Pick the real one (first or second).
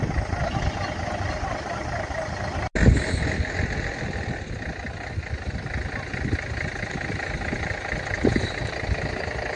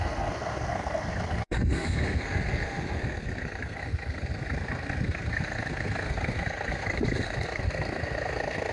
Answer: first